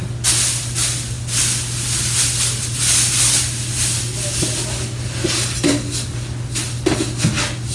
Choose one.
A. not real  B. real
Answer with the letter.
B